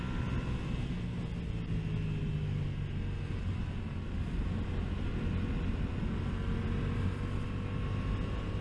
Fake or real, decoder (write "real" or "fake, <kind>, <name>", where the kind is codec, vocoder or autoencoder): real